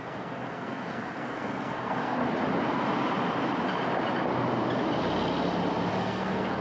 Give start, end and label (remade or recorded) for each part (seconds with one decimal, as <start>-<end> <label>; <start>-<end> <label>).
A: 0.0-2.2 remade; 2.2-6.0 recorded; 6.0-6.6 remade